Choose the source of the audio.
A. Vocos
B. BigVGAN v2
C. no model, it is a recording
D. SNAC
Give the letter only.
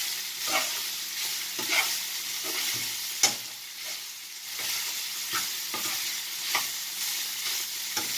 C